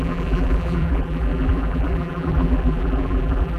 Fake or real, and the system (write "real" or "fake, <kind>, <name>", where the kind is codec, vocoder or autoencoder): fake, vocoder, BigVGAN v2